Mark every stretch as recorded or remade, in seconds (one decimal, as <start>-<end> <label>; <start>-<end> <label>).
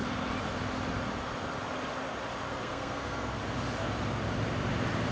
0.0-2.5 recorded; 2.5-3.4 remade; 3.4-5.1 recorded